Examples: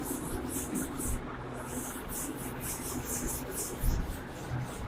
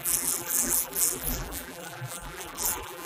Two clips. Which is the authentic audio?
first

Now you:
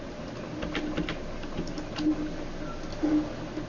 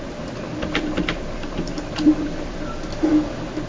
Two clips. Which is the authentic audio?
first